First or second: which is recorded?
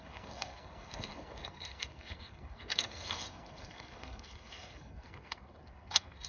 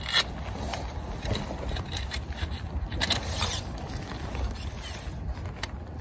second